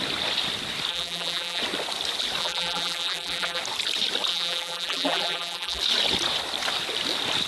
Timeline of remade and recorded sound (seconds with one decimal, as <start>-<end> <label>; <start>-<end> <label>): 0.0-0.9 recorded; 0.9-1.6 remade; 1.6-2.4 recorded; 2.4-3.6 remade; 3.6-4.3 recorded; 4.3-5.8 remade; 5.8-7.5 recorded